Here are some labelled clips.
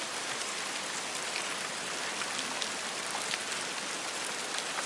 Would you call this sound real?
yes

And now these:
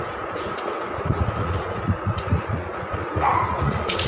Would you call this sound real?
no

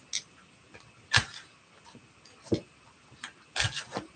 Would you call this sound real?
yes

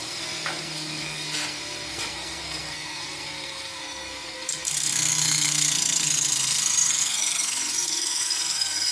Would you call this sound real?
no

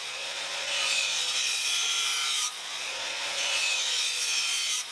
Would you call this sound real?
no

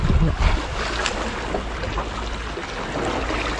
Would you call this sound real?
yes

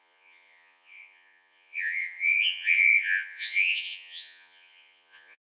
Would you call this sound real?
no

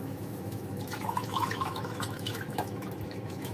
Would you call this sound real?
no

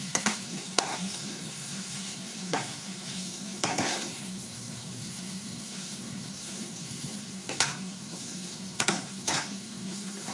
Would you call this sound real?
no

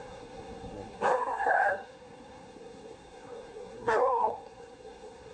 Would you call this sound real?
no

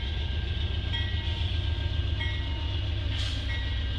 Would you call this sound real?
yes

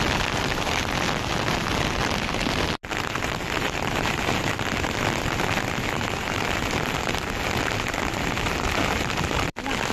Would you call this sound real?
yes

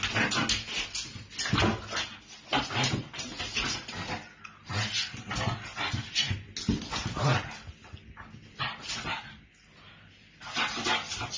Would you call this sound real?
yes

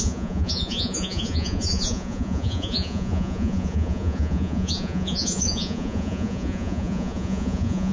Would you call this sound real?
no